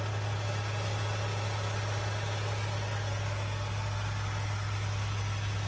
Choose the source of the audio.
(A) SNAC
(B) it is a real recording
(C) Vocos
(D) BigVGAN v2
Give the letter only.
B